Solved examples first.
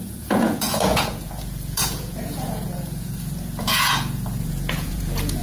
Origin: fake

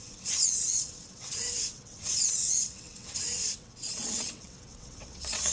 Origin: fake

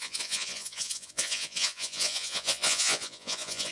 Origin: fake